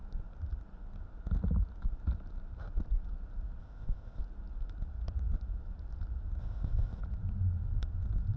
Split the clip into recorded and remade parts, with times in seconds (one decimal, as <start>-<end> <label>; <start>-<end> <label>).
0.0-3.6 recorded; 3.6-4.2 remade; 4.2-6.4 recorded; 6.4-7.0 remade; 7.0-8.4 recorded